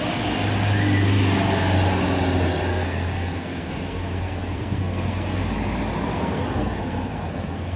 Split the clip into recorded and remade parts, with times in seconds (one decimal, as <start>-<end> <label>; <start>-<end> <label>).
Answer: 0.0-2.7 recorded; 2.7-5.4 remade; 5.4-6.1 recorded; 6.1-7.8 remade

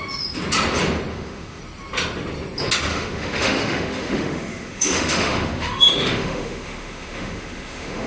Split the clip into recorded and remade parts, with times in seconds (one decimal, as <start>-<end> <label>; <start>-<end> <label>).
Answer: 0.0-1.1 recorded; 1.1-1.6 remade; 1.6-2.9 recorded; 2.9-8.1 remade

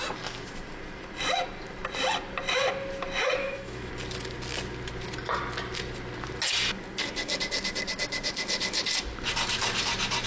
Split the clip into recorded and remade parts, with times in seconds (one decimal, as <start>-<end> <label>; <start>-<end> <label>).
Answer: 0.0-3.4 recorded; 3.4-3.9 remade; 3.9-10.3 recorded